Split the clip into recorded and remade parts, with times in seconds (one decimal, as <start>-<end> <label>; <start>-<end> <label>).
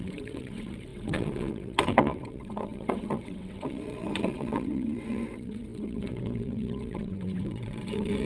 0.0-8.3 remade